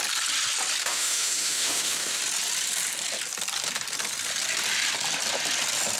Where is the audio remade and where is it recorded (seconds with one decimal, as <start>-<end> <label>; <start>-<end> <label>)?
0.0-0.8 recorded; 0.8-2.2 remade; 2.2-6.0 recorded